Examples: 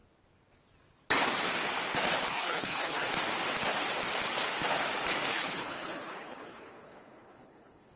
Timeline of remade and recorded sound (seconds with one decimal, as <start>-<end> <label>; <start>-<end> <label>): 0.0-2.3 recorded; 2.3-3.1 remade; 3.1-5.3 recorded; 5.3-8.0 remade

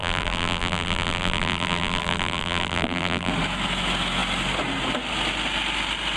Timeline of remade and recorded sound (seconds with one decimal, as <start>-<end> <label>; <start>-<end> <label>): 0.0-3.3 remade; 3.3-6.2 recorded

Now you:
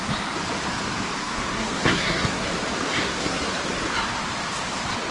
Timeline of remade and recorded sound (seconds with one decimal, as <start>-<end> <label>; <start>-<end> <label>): 0.0-1.2 recorded; 1.2-2.5 remade; 2.5-2.9 recorded; 2.9-3.5 remade; 3.5-5.1 recorded

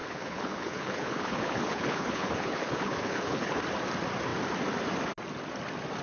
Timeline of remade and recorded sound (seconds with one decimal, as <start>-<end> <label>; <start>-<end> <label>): 0.0-3.6 remade; 3.6-6.0 recorded

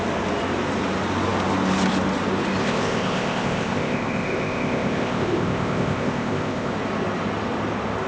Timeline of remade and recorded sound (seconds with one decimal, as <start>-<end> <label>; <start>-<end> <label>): 0.0-2.6 recorded; 2.6-6.7 remade; 6.7-8.1 recorded